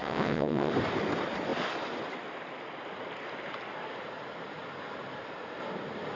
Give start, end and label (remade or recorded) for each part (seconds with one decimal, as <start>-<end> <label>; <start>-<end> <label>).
0.0-0.7 remade; 0.7-6.1 recorded